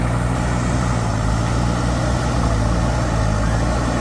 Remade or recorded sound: recorded